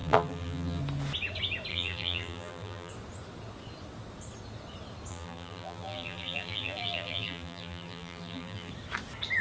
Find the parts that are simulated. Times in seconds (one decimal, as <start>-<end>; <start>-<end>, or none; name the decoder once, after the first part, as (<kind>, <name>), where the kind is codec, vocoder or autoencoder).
0.0-0.8 (vocoder, BigVGAN v2); 1.7-2.9; 5.1-8.7